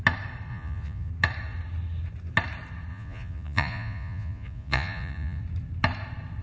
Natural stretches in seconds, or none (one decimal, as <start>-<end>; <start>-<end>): 0.0-0.5; 1.1-2.9; 5.4-6.4